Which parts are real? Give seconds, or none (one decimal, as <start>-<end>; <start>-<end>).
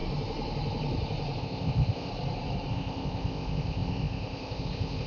0.0-1.4; 2.1-2.7